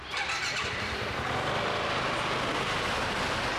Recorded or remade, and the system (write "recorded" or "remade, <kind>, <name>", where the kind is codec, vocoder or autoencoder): recorded